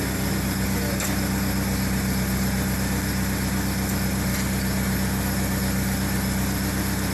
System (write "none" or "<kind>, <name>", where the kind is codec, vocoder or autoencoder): none